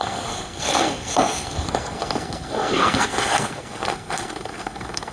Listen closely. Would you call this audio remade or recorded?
remade